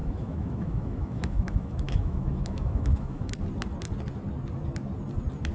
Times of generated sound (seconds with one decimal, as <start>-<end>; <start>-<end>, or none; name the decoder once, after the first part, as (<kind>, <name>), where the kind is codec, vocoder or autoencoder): 0.0-3.3 (autoencoder, DAC-VAE)